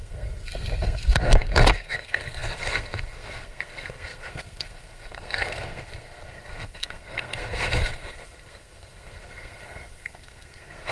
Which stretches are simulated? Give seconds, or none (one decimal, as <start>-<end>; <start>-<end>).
0.0-10.9